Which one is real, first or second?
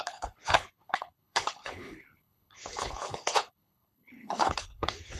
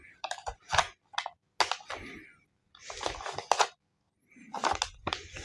second